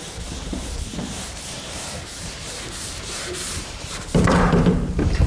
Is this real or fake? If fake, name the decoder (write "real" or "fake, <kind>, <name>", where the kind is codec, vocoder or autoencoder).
fake, vocoder, BigVGAN v2